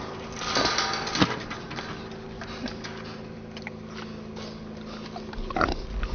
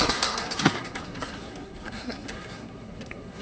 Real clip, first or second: first